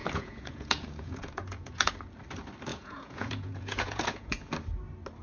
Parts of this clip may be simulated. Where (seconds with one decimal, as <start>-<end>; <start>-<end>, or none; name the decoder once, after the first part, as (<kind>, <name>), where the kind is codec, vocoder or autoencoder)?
0.0-1.9 (vocoder, Vocos); 2.7-4.5